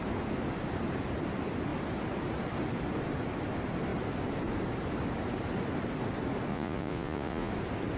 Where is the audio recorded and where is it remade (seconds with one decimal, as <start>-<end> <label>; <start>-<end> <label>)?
0.0-6.5 recorded; 6.5-7.5 remade; 7.5-8.0 recorded